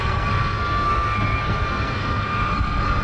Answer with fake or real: fake